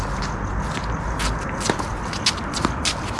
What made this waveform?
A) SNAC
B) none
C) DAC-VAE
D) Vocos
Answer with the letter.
B